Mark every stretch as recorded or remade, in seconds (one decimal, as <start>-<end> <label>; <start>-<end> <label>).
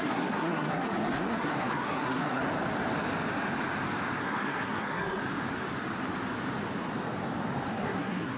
0.0-2.4 remade; 2.4-4.2 recorded; 4.2-5.2 remade; 5.2-7.7 recorded; 7.7-8.4 remade